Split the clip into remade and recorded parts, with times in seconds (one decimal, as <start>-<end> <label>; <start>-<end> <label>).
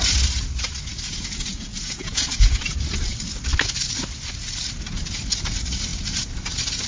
0.0-0.9 recorded; 0.9-2.7 remade; 2.7-6.9 recorded